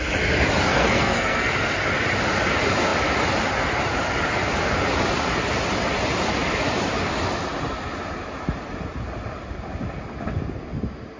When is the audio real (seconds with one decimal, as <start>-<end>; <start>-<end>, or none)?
0.0-0.7; 1.5-11.2